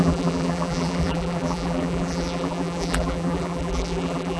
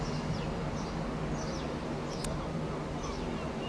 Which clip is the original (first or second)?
second